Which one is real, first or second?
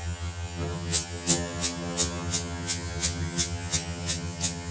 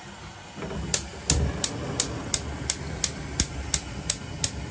second